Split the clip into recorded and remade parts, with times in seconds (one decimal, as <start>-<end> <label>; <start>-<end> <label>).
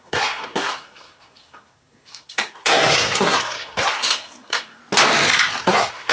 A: 0.0-4.8 remade; 4.8-5.6 recorded; 5.6-6.1 remade